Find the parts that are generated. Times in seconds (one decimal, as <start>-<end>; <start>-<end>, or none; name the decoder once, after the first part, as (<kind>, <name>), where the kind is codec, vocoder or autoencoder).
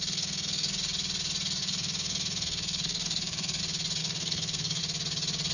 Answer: 0.0-0.7 (codec, SNAC); 1.6-3.6; 4.0-4.8